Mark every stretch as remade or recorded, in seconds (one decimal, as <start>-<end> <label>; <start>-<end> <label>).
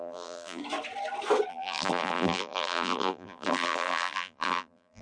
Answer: 0.0-0.6 remade; 0.6-1.5 recorded; 1.5-5.0 remade